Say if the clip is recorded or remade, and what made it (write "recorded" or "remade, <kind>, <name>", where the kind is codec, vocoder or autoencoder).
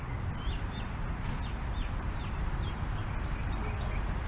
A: recorded